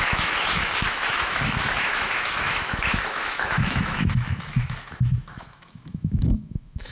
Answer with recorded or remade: remade